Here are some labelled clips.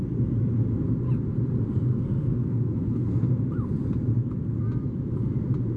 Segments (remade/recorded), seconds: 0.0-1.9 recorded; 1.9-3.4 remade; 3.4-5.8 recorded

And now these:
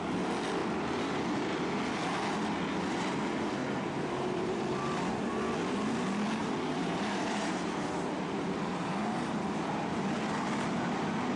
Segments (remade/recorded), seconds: 0.0-3.6 recorded; 3.6-4.6 remade; 4.6-6.4 recorded; 6.4-8.7 remade; 8.7-11.4 recorded

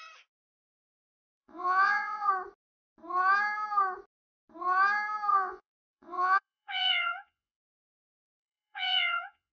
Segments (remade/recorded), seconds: 0.0-1.2 recorded; 1.2-2.3 remade; 2.3-5.3 recorded; 5.3-9.5 remade

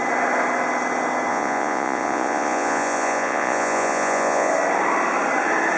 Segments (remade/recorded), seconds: 0.0-1.3 recorded; 1.3-4.5 remade; 4.5-5.8 recorded